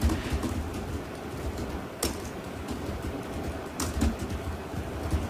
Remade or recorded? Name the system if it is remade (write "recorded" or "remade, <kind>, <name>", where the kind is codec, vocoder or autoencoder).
recorded